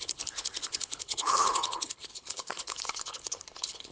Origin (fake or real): fake